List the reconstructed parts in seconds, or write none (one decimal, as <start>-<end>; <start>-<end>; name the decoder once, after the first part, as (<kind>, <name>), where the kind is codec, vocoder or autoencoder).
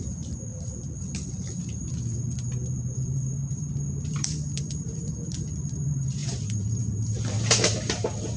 0.0-0.5 (vocoder, BigVGAN v2); 2.8-8.4